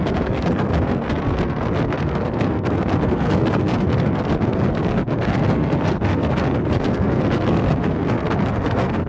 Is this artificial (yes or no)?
yes